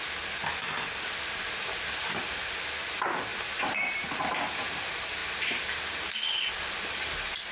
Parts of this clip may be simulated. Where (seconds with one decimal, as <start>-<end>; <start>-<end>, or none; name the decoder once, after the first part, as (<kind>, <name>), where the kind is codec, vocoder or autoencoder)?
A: 0.6-2.5 (vocoder, BigVGAN v2); 3.3-4.1